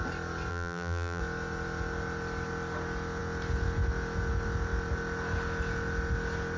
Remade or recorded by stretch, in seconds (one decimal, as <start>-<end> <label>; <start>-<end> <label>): 0.0-0.5 recorded; 0.5-1.2 remade; 1.2-6.6 recorded